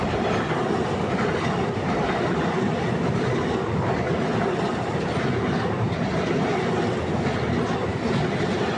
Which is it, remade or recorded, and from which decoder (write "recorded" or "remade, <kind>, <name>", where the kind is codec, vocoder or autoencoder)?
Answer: recorded